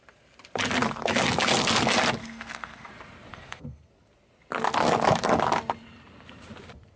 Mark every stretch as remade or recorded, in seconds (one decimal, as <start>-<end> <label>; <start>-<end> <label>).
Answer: 0.0-2.2 recorded; 2.2-2.9 remade; 2.9-3.3 recorded; 3.3-3.9 remade; 3.9-7.0 recorded